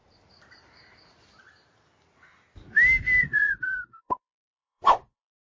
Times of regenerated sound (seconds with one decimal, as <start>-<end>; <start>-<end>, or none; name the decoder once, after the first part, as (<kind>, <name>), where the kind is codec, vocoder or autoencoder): 3.2-5.4 (vocoder, Vocos)